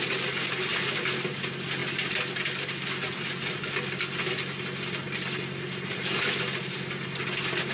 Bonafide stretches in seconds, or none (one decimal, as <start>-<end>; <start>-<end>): 0.0-7.7